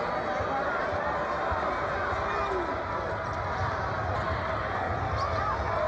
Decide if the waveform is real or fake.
real